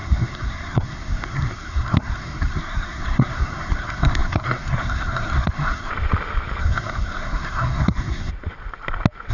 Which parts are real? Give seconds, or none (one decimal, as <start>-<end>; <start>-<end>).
5.9-6.6; 8.3-9.3